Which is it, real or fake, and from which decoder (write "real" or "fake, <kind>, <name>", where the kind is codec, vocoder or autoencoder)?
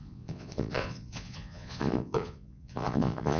fake, vocoder, Vocos